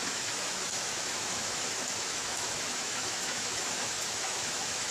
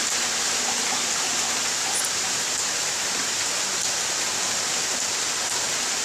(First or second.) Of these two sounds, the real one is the second